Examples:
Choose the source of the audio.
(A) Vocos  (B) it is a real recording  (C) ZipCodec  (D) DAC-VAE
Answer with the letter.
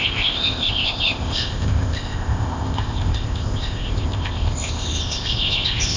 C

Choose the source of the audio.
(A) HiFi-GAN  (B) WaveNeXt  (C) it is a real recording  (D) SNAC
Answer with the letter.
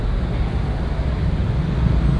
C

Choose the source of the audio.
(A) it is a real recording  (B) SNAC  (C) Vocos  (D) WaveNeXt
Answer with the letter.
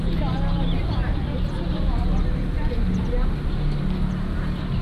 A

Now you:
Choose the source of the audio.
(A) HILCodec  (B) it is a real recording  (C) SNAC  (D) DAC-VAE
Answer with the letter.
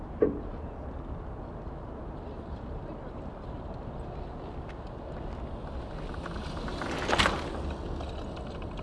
B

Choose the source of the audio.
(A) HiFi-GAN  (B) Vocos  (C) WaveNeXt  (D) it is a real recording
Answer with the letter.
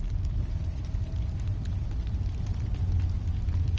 D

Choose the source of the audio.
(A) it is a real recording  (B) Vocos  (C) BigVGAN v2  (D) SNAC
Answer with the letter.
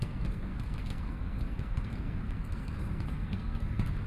D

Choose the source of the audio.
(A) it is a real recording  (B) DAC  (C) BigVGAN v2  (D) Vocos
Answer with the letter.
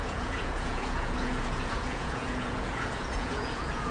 D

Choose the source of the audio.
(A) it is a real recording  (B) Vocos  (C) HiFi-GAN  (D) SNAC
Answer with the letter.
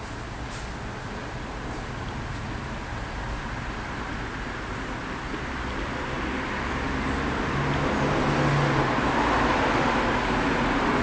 A